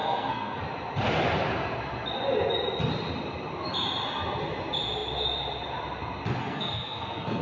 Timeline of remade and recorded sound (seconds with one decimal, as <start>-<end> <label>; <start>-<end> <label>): 0.0-0.6 remade; 0.6-6.4 recorded; 6.4-7.4 remade